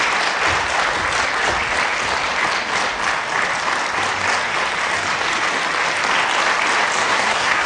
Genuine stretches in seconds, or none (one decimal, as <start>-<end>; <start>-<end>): 0.0-7.0